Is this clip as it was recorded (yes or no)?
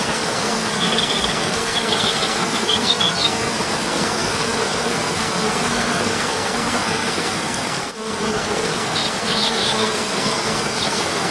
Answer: no